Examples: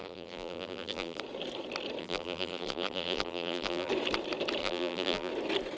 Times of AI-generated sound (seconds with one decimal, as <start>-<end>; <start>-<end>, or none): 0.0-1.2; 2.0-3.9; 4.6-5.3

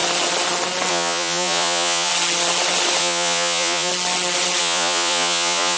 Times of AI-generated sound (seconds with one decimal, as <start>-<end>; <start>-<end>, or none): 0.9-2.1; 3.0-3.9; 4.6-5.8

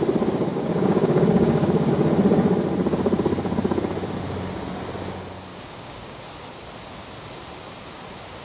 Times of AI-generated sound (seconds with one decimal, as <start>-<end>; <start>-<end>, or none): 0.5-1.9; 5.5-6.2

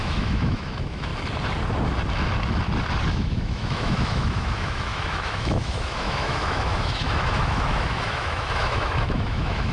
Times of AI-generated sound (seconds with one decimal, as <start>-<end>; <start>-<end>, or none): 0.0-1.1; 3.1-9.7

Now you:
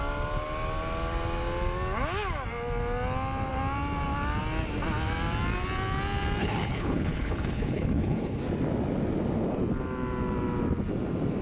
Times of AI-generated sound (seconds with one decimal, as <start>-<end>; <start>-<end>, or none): 6.4-8.4

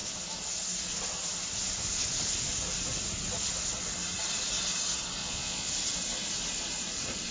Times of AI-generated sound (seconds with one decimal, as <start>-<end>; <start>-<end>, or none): 5.2-5.7

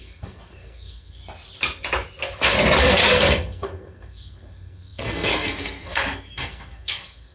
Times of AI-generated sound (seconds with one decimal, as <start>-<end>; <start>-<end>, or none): 0.0-1.2; 2.8-7.3

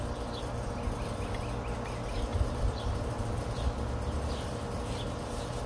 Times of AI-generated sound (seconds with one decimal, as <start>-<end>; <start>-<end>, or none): 2.3-5.7